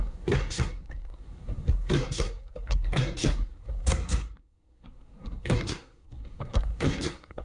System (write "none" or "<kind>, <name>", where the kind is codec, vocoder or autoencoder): codec, SNAC